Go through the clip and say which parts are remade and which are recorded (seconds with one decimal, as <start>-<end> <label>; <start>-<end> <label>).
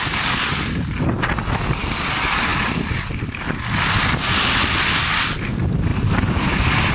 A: 0.0-5.9 recorded; 5.9-6.9 remade